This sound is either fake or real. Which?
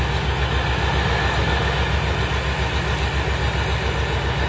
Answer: real